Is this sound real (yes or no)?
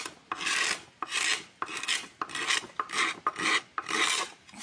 yes